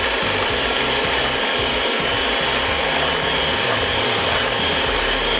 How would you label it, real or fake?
real